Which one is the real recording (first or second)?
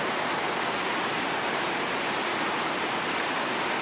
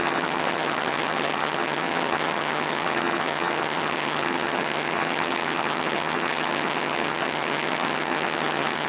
first